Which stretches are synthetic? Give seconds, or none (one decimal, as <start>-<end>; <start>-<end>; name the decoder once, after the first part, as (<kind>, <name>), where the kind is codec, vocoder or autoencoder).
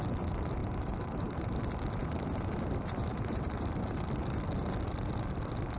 0.6-1.6 (vocoder, BigVGAN v2); 2.0-4.0